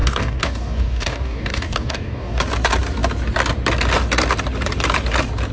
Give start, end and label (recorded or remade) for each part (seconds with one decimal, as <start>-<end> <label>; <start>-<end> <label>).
0.0-2.4 remade; 2.4-5.5 recorded